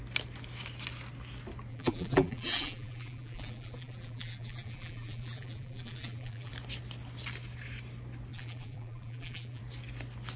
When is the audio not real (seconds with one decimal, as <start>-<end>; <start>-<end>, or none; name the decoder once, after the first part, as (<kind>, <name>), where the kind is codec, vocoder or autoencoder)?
1.7-6.5 (vocoder, BigVGAN v2); 8.3-9.6